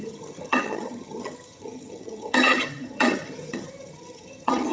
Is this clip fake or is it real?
fake